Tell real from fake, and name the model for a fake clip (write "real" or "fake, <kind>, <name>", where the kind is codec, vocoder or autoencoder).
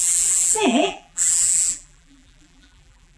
fake, vocoder, BigVGAN v2